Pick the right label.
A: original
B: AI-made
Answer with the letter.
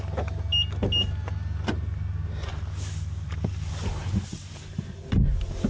A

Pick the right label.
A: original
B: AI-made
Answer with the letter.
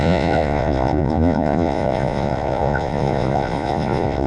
B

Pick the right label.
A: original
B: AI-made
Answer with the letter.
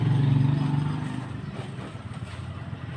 A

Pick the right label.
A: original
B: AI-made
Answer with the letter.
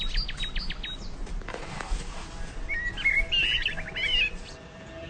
A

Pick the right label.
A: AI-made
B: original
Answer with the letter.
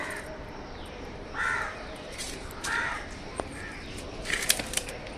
A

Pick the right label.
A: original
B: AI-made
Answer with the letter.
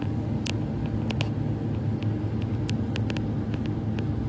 A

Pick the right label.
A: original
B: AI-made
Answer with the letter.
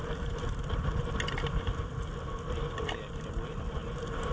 B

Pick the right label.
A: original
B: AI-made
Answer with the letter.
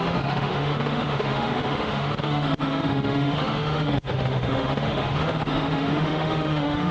B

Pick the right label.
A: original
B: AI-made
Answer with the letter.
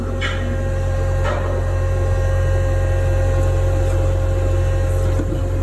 A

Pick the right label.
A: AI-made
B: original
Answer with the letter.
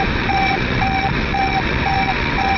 A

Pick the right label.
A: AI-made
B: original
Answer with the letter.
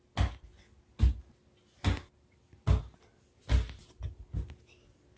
B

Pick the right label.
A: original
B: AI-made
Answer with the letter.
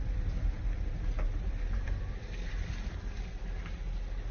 A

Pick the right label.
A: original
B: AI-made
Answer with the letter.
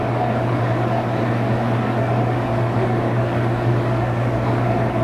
B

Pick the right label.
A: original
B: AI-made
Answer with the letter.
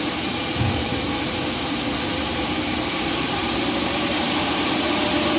B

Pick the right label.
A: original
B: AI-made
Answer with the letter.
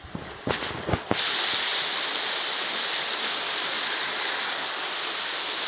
A